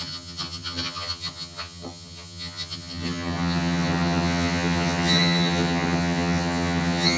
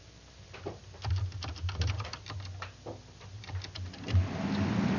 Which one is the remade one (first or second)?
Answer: first